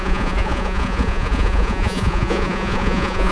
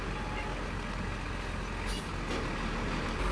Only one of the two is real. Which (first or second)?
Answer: second